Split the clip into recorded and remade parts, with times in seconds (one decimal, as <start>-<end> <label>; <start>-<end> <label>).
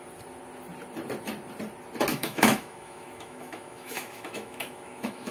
0.0-2.1 recorded; 2.1-5.3 remade